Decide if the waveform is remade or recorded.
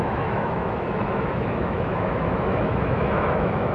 remade